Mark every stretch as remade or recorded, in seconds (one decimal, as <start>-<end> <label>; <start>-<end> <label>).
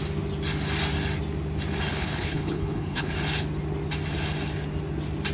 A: 0.0-1.9 recorded; 1.9-3.1 remade; 3.1-5.3 recorded